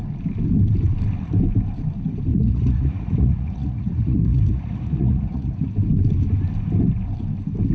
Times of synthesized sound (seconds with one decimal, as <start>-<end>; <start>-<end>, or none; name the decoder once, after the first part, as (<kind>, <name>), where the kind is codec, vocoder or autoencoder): 2.3-5.7 (vocoder, Vocos)